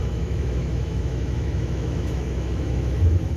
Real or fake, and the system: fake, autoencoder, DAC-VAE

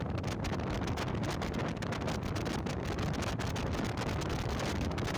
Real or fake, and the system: real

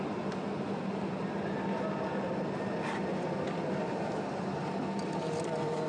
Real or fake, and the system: real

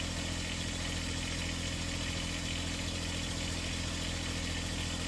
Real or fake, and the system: real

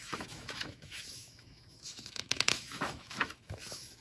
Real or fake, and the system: fake, autoencoder, DAC-VAE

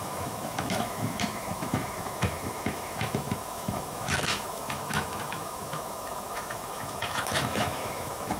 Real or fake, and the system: fake, autoencoder, DAC-VAE